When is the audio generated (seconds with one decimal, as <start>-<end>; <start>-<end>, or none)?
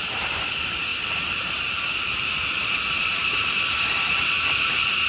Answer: none